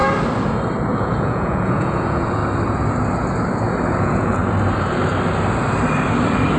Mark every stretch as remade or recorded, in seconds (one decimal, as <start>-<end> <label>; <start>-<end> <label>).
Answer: 0.0-0.9 recorded; 0.9-2.4 remade; 2.4-4.0 recorded; 4.0-4.4 remade; 4.4-6.6 recorded